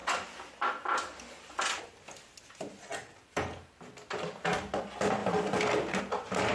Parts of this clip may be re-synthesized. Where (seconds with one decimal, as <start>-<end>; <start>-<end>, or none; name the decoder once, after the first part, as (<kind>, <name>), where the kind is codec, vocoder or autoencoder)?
0.0-1.8 (vocoder, BigVGAN v2); 2.9-3.5